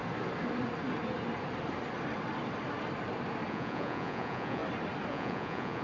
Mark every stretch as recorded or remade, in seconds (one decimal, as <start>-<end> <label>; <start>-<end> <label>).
0.0-3.5 recorded; 3.5-4.6 remade; 4.6-5.1 recorded; 5.1-5.8 remade